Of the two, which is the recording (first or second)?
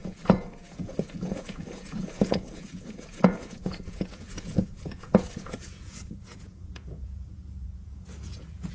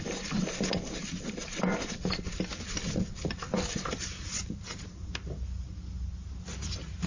second